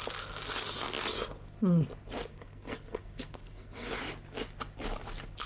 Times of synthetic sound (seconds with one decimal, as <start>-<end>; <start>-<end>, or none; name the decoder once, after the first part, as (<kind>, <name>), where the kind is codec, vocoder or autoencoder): 2.3-3.9 (codec, SNAC)